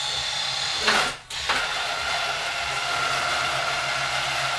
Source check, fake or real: real